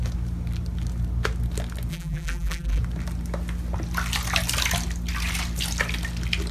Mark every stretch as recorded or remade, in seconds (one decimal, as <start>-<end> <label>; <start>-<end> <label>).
0.0-1.9 recorded; 1.9-2.8 remade; 2.8-6.5 recorded